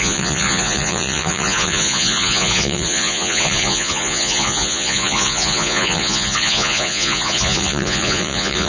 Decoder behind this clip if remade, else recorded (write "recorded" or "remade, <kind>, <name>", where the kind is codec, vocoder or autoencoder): remade, vocoder, Vocos